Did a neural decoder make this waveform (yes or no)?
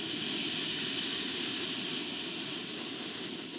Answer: no